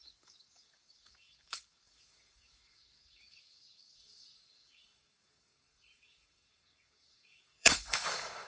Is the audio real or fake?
fake